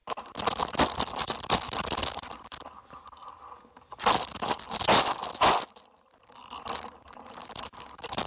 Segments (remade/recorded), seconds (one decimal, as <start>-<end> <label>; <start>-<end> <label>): 0.0-8.3 recorded